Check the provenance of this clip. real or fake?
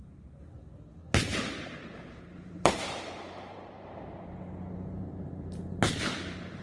fake